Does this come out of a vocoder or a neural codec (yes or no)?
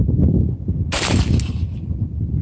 no